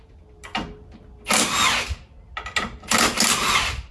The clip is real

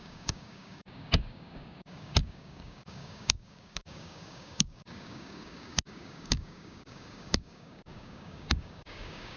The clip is fake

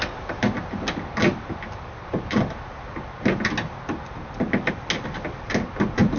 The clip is real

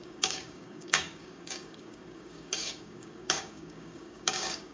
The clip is fake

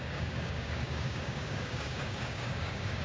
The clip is fake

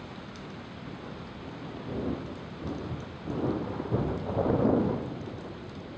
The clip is real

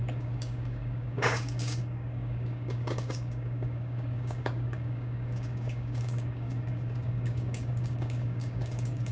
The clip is fake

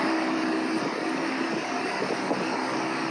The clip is fake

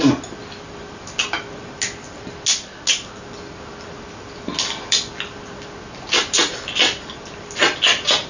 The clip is real